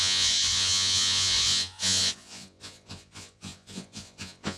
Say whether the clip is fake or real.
fake